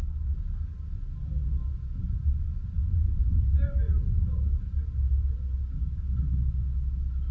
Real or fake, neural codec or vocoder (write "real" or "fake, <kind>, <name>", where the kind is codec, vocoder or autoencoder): real